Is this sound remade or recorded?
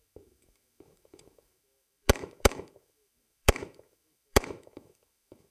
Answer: remade